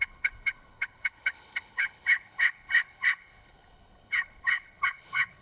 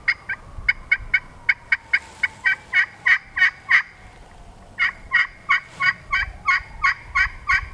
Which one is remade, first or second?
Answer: first